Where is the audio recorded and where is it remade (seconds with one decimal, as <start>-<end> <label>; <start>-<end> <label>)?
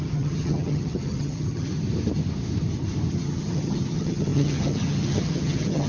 0.0-1.7 remade; 1.7-3.1 recorded; 3.1-5.9 remade